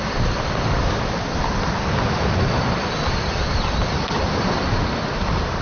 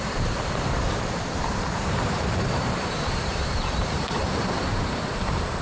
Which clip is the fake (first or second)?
second